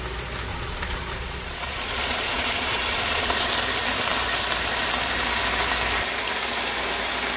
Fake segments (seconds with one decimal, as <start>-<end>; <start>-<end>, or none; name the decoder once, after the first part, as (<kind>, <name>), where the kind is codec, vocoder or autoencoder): 0.5-3.5 (vocoder, Vocos)